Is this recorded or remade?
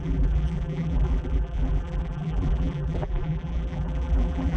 remade